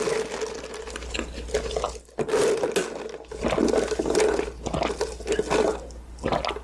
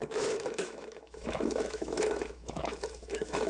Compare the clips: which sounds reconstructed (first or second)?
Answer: second